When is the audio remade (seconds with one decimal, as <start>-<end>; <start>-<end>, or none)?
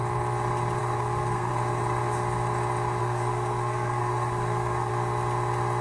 0.8-1.5; 3.0-4.9